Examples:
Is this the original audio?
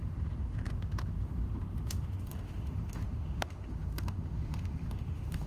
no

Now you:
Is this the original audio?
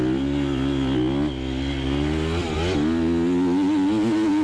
yes